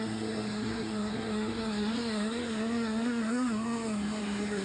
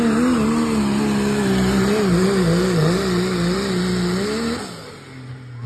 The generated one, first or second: first